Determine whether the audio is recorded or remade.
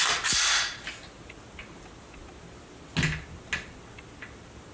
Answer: recorded